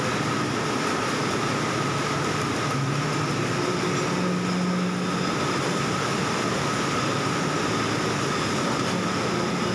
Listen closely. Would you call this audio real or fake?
real